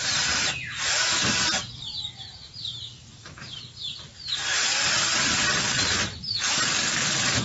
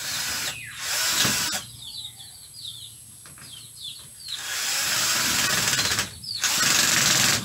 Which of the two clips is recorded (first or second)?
second